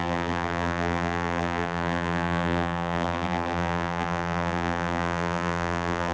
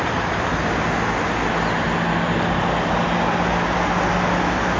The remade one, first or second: first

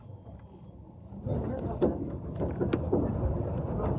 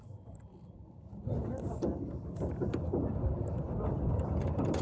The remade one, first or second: second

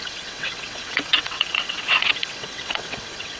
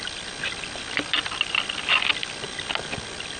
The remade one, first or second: first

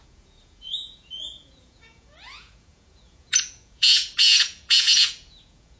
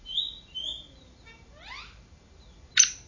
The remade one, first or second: first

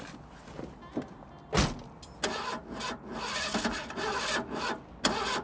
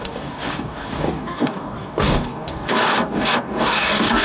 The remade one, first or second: second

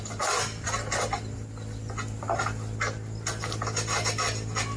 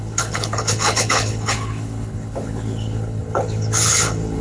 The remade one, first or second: second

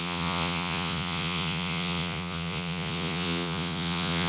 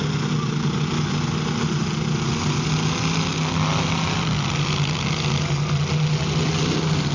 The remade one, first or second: first